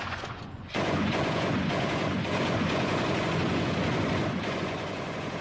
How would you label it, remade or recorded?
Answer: remade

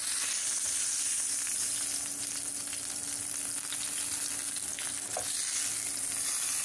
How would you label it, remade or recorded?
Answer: recorded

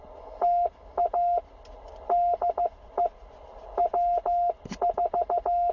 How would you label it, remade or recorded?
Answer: recorded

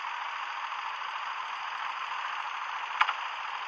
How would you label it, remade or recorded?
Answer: recorded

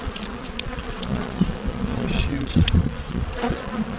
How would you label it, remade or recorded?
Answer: remade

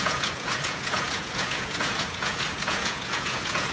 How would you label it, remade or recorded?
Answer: remade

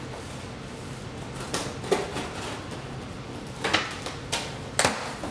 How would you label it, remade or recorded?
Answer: recorded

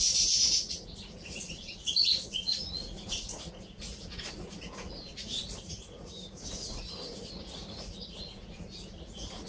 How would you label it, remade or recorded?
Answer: remade